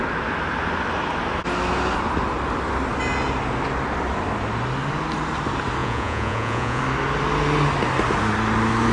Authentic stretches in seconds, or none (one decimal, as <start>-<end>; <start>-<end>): 0.0-5.8; 6.8-8.9